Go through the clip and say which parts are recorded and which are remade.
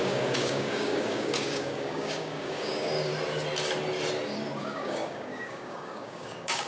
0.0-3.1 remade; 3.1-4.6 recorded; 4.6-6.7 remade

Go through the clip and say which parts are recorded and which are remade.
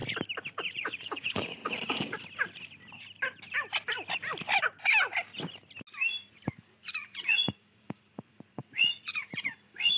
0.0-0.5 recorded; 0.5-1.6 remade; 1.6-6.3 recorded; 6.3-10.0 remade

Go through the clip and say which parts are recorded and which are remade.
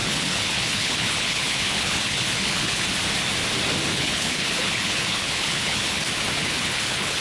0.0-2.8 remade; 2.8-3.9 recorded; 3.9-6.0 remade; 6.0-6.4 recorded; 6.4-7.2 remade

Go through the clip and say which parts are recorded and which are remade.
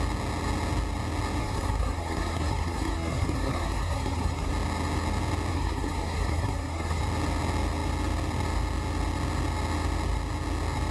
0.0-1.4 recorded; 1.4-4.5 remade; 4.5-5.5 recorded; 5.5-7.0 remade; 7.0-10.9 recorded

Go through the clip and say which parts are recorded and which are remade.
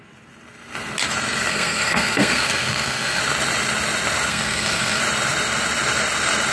0.0-1.5 recorded; 1.5-3.2 remade; 3.2-4.3 recorded; 4.3-5.0 remade; 5.0-6.5 recorded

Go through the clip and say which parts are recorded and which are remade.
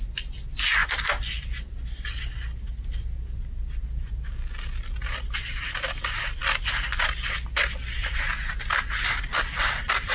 0.0-10.1 recorded